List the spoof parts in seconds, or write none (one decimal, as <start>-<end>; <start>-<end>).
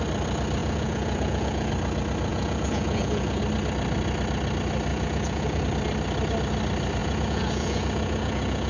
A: 0.6-1.7; 2.3-3.4; 4.9-5.6; 7.0-8.7